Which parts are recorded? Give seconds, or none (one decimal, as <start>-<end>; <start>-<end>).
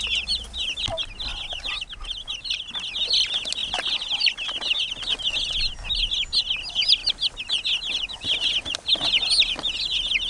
0.0-10.3